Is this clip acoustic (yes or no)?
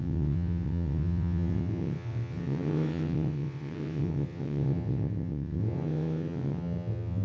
no